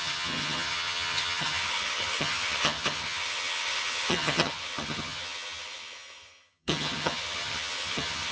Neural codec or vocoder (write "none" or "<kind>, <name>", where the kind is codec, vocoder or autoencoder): vocoder, HiFi-GAN